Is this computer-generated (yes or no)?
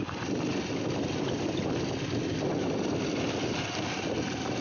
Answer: no